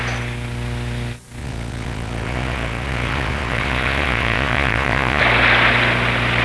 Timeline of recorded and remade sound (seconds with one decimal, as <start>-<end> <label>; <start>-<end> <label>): 0.0-1.4 recorded; 1.4-5.2 remade; 5.2-6.4 recorded